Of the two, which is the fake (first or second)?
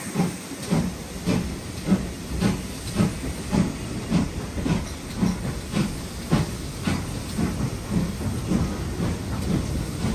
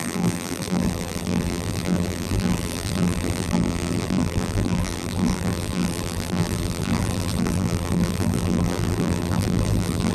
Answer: second